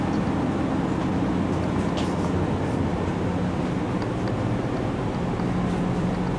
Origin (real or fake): real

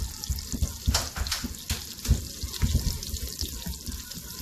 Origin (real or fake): real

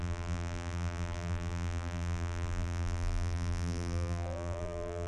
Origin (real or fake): fake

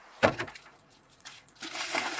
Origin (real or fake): fake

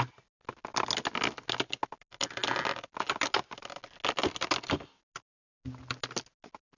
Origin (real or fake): real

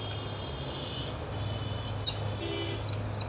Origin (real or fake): real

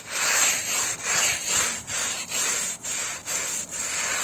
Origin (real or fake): real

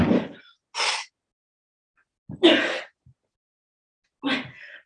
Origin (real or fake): real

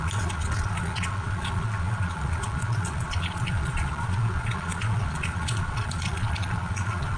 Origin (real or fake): fake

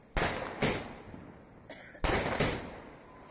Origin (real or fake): real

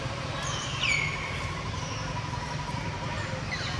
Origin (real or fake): real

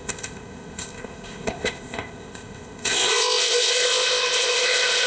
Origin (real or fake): fake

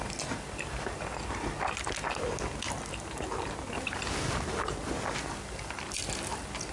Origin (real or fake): real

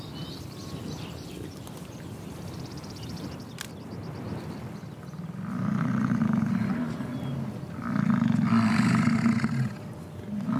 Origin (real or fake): real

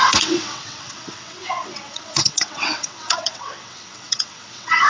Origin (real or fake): fake